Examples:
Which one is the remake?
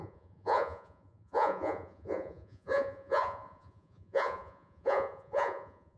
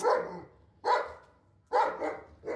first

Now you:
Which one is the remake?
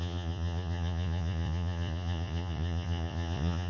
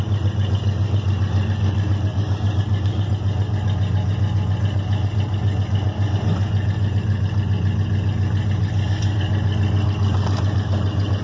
first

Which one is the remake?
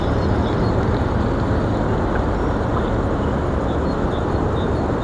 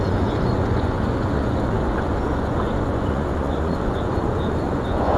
second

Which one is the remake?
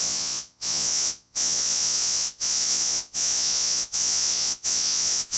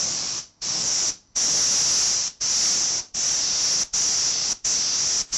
first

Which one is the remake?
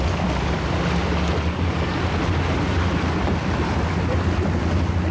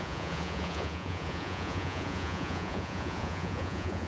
second